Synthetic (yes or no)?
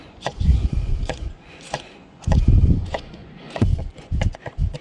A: yes